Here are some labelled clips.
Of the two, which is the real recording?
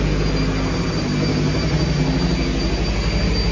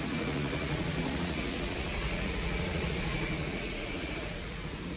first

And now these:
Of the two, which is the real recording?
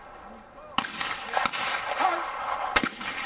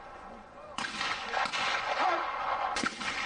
first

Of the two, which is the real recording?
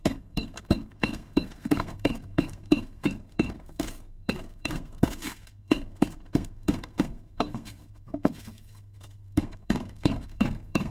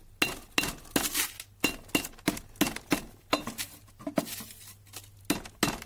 second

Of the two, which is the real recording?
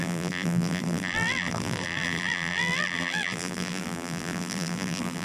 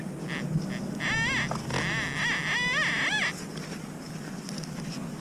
second